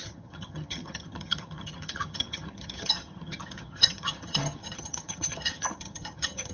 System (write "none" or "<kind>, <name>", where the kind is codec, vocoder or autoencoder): vocoder, HiFi-GAN